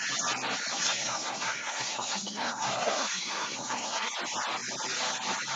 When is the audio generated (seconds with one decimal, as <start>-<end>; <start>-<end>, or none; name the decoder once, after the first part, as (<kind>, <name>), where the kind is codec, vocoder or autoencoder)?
0.7-4.1 (codec, SNAC)